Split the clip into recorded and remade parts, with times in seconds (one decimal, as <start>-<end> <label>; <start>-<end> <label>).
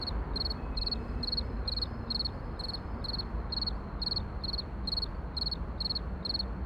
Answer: 0.0-2.0 remade; 2.0-6.7 recorded